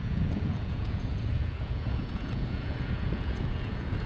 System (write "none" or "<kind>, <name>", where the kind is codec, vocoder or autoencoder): vocoder, Vocos